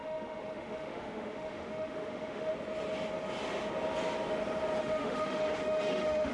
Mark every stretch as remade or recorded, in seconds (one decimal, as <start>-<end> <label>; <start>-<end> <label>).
0.0-2.5 remade; 2.5-4.8 recorded; 4.8-6.3 remade